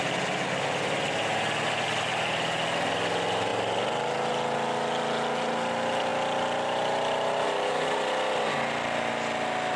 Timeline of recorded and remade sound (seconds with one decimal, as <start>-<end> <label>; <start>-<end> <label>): 0.0-9.8 recorded